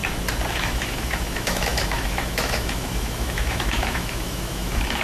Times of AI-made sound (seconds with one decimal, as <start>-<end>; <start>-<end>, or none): 0.5-5.0

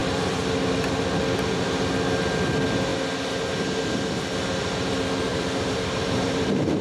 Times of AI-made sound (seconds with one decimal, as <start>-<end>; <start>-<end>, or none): 5.3-6.8

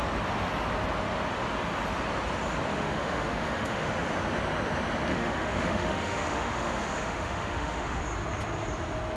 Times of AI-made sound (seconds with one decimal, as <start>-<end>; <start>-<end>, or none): 2.7-3.9; 5.1-8.0